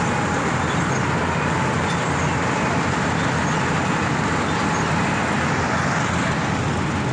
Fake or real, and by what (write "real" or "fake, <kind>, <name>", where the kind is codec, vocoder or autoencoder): real